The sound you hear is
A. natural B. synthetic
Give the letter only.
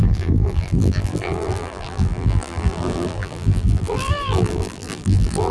B